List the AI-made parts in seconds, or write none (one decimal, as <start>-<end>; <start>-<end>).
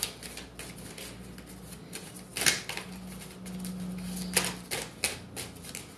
none